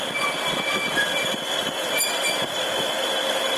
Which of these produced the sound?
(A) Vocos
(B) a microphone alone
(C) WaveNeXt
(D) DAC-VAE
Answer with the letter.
B